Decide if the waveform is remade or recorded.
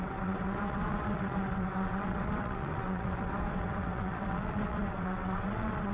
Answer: remade